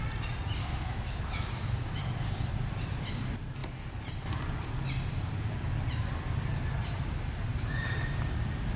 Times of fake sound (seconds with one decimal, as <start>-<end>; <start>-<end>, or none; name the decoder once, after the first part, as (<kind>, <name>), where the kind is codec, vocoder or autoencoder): 0.6-2.0 (autoencoder, DAC-VAE)